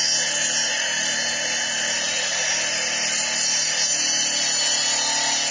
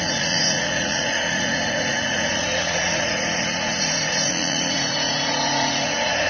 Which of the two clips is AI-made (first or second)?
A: second